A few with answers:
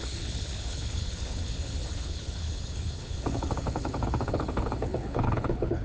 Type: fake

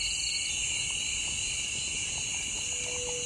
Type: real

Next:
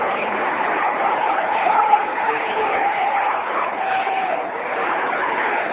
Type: fake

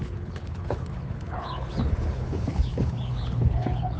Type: fake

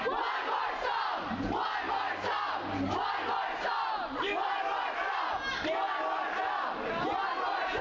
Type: real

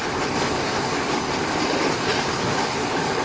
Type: fake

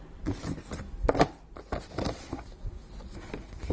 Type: real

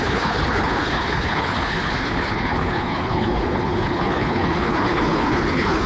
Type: fake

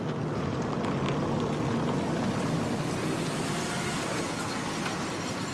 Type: real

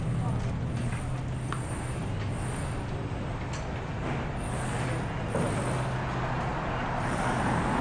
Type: real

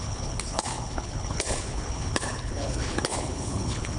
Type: fake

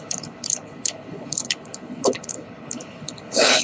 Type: fake